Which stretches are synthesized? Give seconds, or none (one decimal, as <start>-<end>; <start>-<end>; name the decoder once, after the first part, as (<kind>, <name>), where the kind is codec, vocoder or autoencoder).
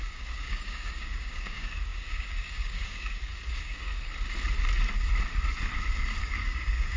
0.0-3.9 (codec, DAC); 6.2-7.0